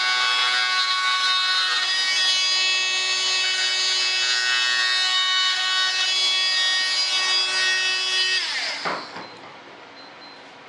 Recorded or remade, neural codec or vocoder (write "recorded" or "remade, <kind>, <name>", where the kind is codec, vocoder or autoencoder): recorded